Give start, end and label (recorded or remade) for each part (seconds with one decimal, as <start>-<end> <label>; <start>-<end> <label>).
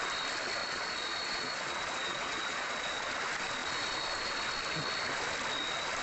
0.0-0.6 recorded; 0.6-3.1 remade; 3.1-6.0 recorded